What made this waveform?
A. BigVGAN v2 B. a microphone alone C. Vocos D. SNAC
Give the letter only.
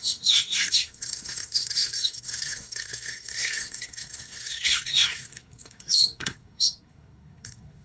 D